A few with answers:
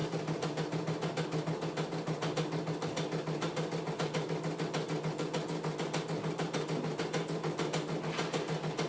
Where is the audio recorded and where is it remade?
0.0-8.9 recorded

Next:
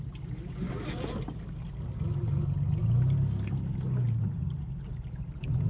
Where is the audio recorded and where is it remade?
0.0-5.7 recorded

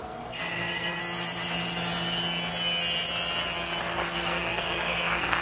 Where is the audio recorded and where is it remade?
0.0-1.0 remade; 1.0-3.8 recorded; 3.8-5.4 remade

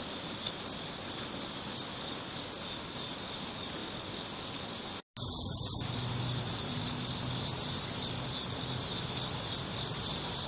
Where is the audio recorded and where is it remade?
0.0-10.5 recorded